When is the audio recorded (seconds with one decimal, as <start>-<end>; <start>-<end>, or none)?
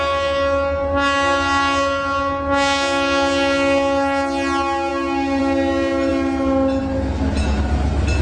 0.0-8.2